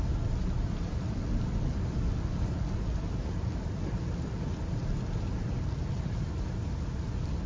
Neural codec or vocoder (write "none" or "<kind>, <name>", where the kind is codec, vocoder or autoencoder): none